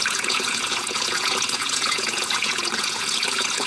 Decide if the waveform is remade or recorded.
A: remade